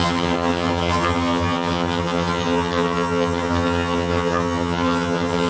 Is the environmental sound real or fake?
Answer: fake